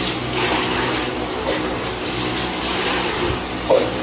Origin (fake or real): real